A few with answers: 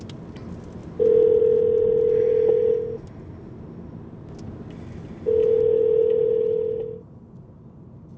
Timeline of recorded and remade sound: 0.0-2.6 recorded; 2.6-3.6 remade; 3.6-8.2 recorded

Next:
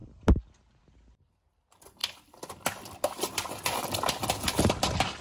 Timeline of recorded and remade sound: 0.0-5.2 recorded

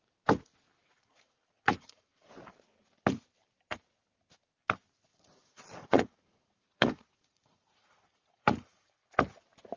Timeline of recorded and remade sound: 0.0-0.8 recorded; 0.8-2.3 remade; 2.3-5.1 recorded; 5.1-9.1 remade; 9.1-9.8 recorded

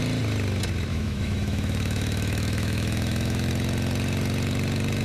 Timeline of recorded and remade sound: 0.0-0.9 recorded; 0.9-3.5 remade; 3.5-5.0 recorded

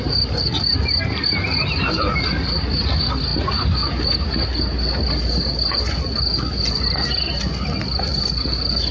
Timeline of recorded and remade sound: 0.0-8.9 recorded

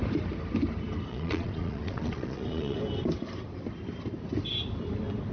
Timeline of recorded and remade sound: 0.0-1.1 recorded; 1.1-2.8 remade; 2.8-5.3 recorded

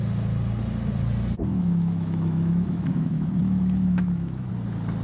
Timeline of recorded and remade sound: 0.0-1.5 recorded; 1.5-4.5 remade; 4.5-5.0 recorded